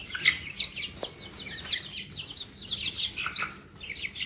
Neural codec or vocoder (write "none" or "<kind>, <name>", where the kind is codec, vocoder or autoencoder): none